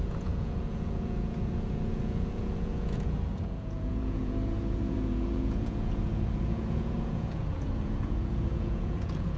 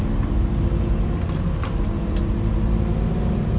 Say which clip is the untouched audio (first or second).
second